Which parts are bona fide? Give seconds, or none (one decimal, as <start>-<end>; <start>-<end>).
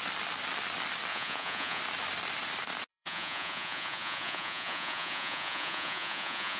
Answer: 0.0-1.1; 1.8-2.9